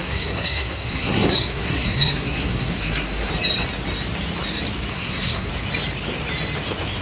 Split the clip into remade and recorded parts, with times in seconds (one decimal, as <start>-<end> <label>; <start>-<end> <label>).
0.0-3.3 remade; 3.3-4.9 recorded; 4.9-5.5 remade; 5.5-7.0 recorded